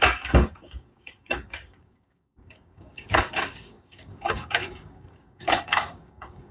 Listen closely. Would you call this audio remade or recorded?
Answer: remade